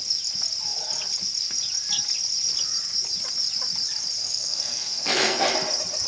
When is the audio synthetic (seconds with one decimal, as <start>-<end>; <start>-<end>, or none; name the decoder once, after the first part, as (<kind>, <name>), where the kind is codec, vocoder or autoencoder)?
4.2-5.4 (codec, SNAC)